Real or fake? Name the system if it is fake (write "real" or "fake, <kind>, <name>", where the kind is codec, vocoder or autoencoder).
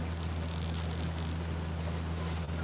real